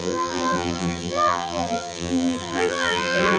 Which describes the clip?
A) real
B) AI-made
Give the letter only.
B